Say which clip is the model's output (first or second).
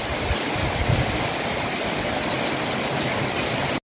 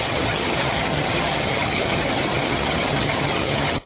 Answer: second